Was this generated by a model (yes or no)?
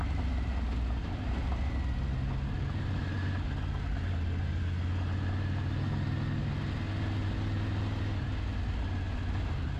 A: no